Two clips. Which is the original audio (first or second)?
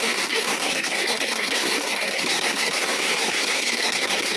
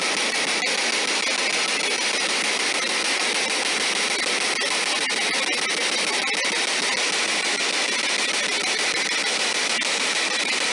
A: second